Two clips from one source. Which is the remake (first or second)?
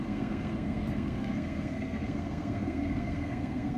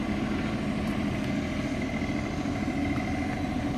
first